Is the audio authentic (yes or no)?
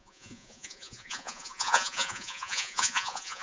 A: no